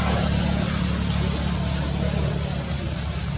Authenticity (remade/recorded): recorded